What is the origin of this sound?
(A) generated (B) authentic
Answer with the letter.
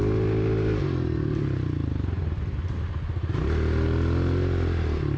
B